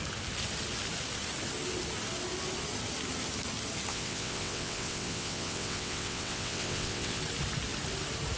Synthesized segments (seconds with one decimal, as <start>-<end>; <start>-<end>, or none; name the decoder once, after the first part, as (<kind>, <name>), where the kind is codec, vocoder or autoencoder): 3.9-7.2 (vocoder, WaveNeXt)